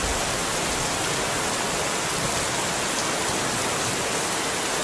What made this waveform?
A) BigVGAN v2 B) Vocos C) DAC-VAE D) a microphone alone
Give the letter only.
D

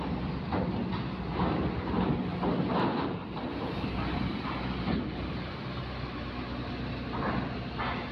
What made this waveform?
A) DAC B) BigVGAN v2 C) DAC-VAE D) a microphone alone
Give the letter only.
D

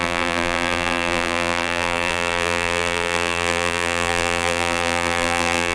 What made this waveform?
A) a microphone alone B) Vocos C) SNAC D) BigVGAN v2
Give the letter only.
D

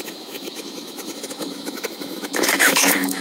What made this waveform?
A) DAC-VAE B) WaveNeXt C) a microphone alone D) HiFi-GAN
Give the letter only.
A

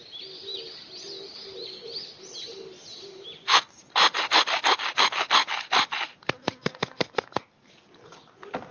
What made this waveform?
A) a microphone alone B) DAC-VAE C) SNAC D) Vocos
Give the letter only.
A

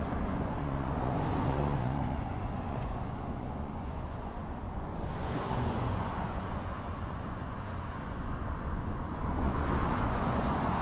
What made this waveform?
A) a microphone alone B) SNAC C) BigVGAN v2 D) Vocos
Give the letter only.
D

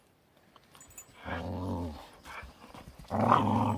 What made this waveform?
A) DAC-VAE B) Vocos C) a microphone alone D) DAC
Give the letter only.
C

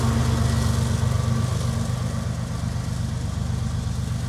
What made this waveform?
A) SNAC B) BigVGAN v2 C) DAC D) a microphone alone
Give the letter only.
D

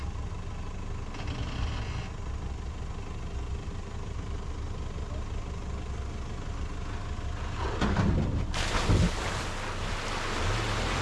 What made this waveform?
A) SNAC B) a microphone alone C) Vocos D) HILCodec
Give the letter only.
B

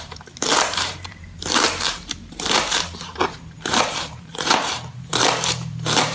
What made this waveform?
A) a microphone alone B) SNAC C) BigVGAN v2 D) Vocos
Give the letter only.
C